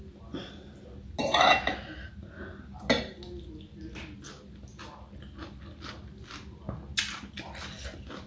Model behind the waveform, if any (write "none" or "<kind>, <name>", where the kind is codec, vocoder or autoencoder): none